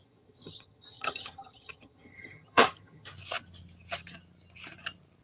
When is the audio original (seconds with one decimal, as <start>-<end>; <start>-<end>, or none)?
3.1-5.2